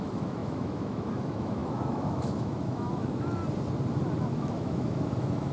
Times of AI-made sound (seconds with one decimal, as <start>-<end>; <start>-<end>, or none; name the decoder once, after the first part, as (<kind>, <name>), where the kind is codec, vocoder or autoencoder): 0.0-3.4 (autoencoder, DAC-VAE); 4.2-5.5